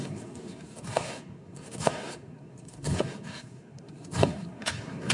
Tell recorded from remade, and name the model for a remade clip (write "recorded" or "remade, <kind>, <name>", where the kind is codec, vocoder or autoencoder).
remade, codec, SNAC